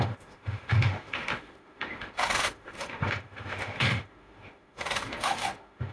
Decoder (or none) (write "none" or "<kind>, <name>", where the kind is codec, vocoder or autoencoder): autoencoder, DAC-VAE